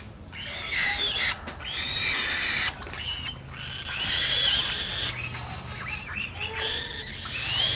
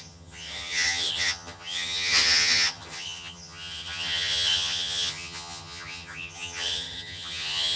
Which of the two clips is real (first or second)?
first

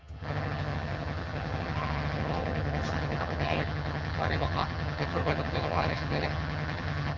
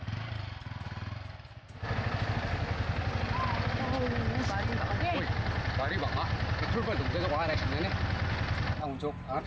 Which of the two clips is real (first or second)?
second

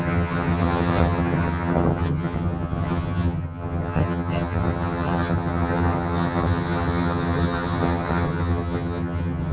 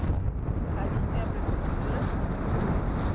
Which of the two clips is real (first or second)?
second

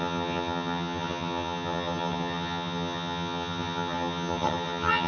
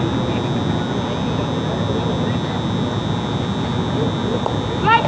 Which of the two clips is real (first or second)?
second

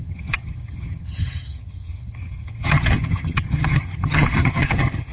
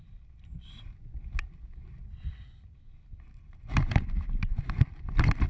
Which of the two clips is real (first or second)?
second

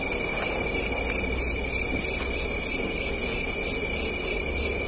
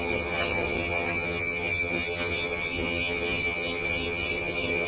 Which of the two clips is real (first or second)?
first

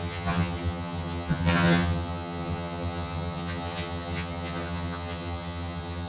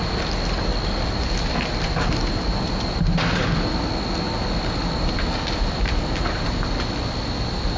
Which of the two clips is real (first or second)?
second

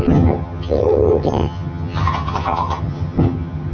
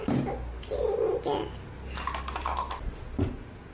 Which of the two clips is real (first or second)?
second